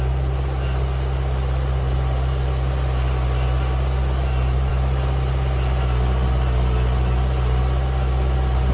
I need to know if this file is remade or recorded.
recorded